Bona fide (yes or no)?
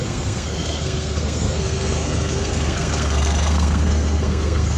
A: no